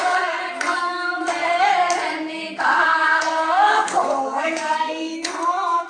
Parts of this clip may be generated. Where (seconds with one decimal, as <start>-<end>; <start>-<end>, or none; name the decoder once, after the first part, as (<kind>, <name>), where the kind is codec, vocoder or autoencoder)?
0.0-1.7 (codec, SNAC); 2.6-5.9